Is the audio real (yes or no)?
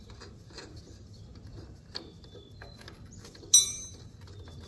yes